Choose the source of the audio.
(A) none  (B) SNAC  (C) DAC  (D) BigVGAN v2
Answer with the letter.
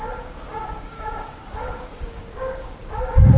C